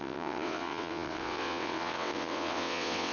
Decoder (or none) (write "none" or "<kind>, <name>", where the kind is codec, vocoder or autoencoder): vocoder, WaveNeXt